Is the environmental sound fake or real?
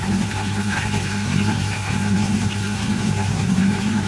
fake